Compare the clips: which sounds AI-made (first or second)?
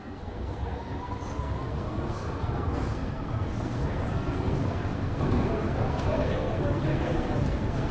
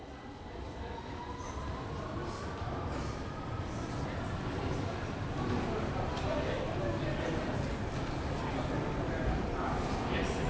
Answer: first